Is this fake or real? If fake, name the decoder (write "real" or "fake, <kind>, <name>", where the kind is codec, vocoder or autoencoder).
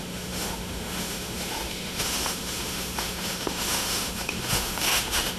fake, autoencoder, DAC-VAE